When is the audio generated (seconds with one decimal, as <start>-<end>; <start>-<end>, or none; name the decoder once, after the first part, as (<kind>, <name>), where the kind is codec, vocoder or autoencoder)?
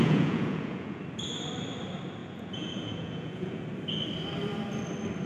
0.0-1.0 (vocoder, Vocos); 2.2-3.6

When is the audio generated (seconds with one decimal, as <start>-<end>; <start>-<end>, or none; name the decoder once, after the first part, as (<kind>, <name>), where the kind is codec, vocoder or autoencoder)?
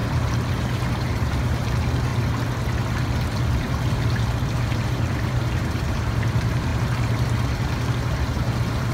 0.5-2.1 (vocoder, BigVGAN v2); 4.2-6.7; 7.9-8.9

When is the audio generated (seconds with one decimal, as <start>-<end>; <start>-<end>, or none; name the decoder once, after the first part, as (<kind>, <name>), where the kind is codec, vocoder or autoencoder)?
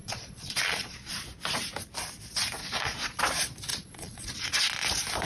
0.0-1.1 (vocoder, Vocos); 2.6-3.2; 3.7-4.6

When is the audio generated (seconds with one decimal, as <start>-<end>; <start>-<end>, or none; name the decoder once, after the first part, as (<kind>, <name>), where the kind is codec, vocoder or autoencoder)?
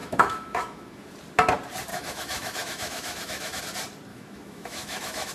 0.0-1.1 (autoencoder, DAC-VAE); 1.9-3.6; 4.1-5.3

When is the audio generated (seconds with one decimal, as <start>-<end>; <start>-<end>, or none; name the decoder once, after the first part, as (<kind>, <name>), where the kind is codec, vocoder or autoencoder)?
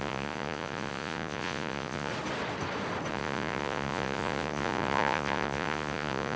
0.0-2.1 (vocoder, Vocos); 3.1-6.4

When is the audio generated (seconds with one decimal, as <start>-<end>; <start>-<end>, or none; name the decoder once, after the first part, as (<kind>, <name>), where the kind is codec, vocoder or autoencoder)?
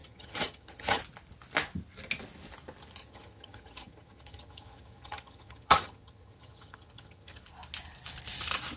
0.0-1.0 (vocoder, HiFi-GAN); 3.0-7.4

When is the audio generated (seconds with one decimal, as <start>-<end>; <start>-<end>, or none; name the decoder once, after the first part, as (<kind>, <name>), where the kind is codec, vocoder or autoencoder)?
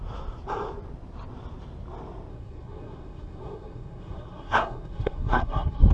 2.3-5.9 (codec, SNAC)